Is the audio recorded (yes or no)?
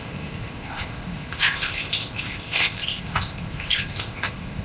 no